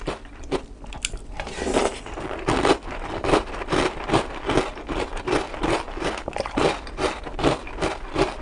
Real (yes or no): yes